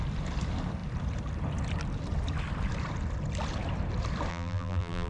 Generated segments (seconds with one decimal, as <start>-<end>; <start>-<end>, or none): 4.3-5.1